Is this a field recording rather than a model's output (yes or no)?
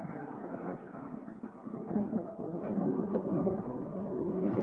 no